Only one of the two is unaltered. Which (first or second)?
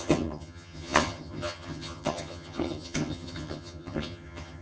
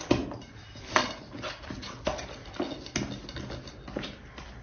second